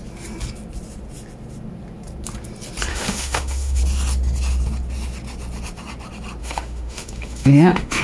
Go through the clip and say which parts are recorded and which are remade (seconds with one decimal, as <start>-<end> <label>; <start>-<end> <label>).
0.0-2.9 recorded; 2.9-3.8 remade; 3.8-6.4 recorded; 6.4-8.0 remade